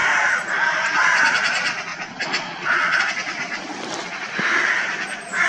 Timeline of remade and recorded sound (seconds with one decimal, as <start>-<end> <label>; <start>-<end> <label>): 0.0-1.9 recorded; 1.9-3.0 remade; 3.0-5.5 recorded